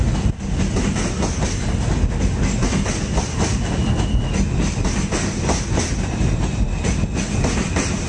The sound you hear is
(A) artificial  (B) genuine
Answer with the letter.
B